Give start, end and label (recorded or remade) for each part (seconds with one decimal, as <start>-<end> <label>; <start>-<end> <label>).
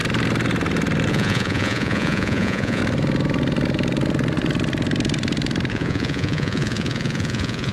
0.0-1.1 recorded; 1.1-2.8 remade; 2.8-5.7 recorded; 5.7-7.7 remade